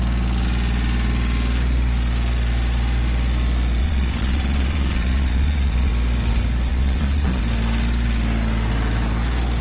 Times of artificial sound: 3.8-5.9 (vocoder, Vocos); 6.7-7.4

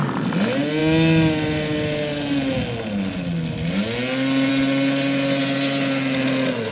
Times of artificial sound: none

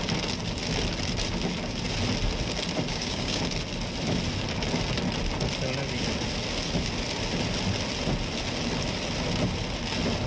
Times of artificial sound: 2.9-3.4 (codec, DAC)

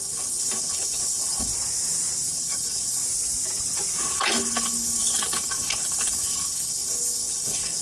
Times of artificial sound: 0.0-1.5 (codec, HILCodec); 2.3-3.0; 4.0-7.8

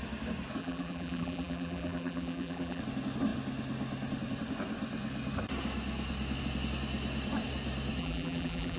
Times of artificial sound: 0.6-2.8 (vocoder, BigVGAN v2); 8.0-8.8

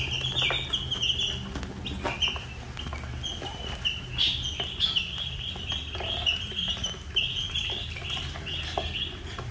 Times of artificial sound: none

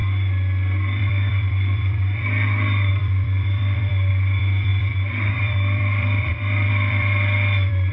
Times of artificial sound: 1.0-7.9 (vocoder, BigVGAN v2)

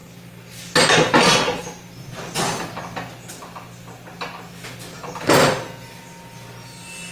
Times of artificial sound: none